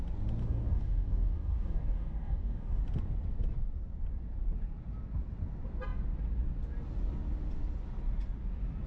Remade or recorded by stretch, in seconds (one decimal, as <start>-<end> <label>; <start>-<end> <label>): 0.0-0.4 recorded; 0.4-2.8 remade; 2.8-8.9 recorded